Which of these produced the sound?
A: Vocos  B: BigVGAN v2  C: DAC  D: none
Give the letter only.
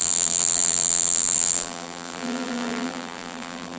B